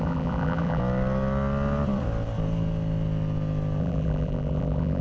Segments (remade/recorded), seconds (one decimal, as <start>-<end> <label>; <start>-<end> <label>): 0.0-0.8 remade; 0.8-3.8 recorded; 3.8-5.0 remade